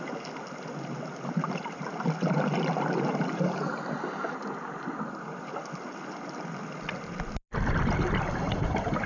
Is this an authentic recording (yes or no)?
yes